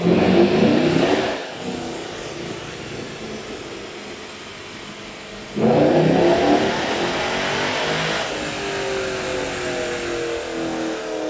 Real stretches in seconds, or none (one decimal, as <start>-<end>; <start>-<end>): 0.0-0.7; 2.8-4.8; 5.4-11.3